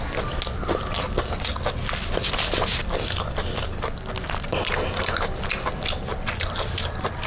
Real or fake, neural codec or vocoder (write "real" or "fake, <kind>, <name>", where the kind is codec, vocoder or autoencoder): real